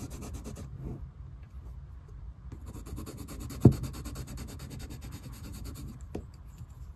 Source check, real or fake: real